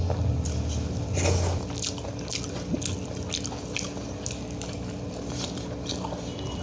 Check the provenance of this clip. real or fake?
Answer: real